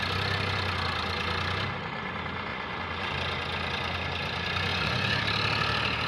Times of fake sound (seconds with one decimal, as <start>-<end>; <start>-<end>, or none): 2.5-3.1; 4.7-5.2